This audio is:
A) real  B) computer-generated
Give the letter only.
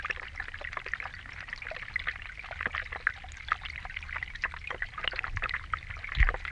A